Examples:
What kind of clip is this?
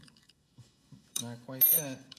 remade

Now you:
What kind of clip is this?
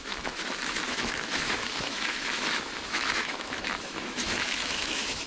remade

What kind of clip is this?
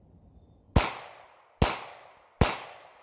recorded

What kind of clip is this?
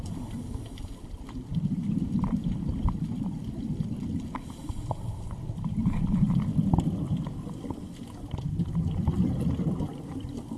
recorded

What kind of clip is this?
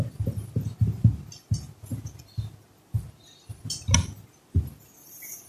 recorded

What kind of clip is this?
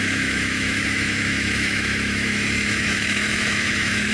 remade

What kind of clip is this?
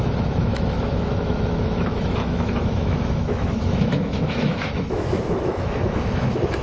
remade